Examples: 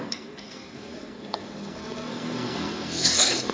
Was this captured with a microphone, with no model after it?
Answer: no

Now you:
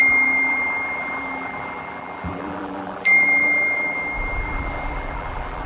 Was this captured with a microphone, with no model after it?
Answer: no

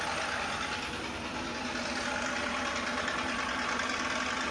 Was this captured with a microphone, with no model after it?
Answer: yes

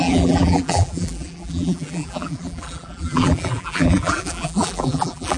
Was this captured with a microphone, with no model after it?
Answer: no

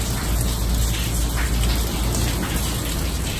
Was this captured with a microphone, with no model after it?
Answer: yes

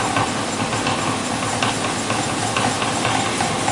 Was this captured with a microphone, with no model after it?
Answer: yes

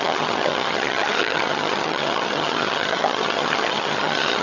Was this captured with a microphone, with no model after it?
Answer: no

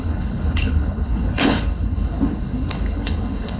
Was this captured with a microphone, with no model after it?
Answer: no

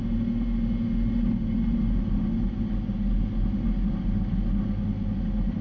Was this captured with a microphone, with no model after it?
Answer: yes